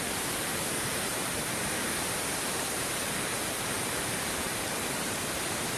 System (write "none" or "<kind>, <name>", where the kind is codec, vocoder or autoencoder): vocoder, BigVGAN v2